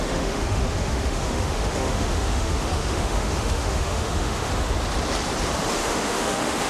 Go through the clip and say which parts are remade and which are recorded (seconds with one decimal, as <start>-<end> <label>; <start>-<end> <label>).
0.0-4.5 remade; 4.5-5.7 recorded; 5.7-6.7 remade